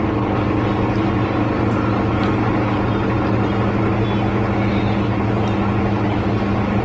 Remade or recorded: recorded